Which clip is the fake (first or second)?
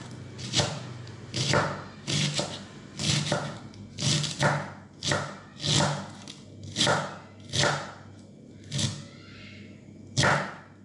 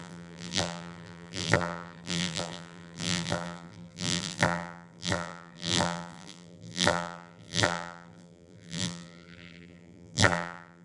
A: second